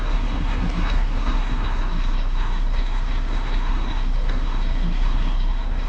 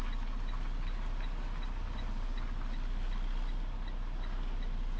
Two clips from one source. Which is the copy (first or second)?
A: first